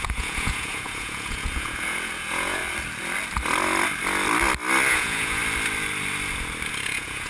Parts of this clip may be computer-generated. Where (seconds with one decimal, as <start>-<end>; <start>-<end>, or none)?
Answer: 0.0-2.6; 4.9-5.4; 6.7-7.3